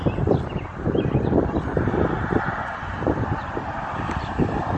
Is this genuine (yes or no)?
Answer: yes